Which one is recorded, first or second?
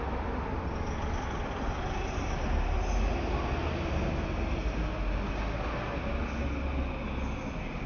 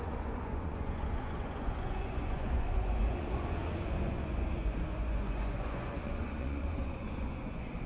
first